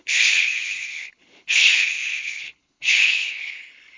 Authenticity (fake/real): fake